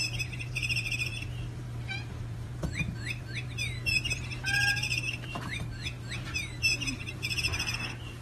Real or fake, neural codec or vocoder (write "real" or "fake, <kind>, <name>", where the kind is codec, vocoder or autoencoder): fake, vocoder, BigVGAN v2